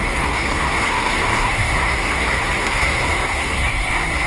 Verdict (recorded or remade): remade